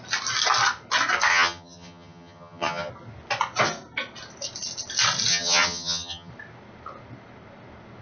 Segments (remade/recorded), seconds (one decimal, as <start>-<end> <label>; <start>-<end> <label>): 0.0-1.3 recorded; 1.3-2.9 remade; 2.9-5.3 recorded; 5.3-6.3 remade; 6.3-8.0 recorded